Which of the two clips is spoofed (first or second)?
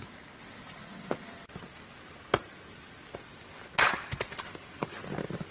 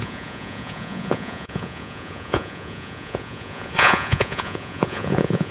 second